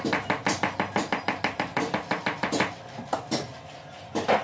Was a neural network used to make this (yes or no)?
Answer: no